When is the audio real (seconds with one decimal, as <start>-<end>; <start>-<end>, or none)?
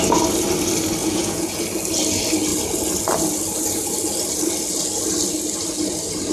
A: 0.0-1.0; 1.6-6.3